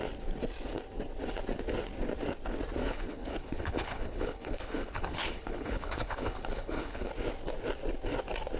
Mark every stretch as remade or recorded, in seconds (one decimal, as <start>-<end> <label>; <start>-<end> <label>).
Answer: 0.0-2.8 recorded; 2.8-7.1 remade; 7.1-8.6 recorded